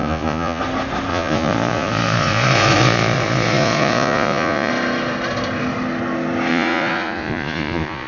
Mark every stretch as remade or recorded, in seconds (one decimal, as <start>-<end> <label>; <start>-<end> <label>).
0.0-0.6 remade; 0.6-1.1 recorded; 1.1-4.7 remade; 4.7-6.5 recorded; 6.5-8.1 remade